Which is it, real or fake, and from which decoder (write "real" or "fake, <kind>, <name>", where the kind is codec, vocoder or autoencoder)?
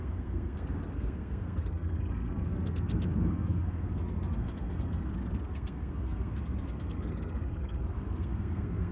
fake, codec, SNAC